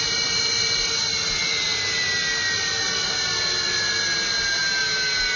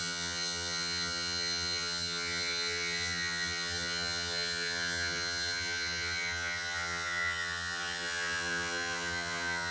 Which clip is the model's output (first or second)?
second